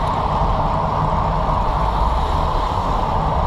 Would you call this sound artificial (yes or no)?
no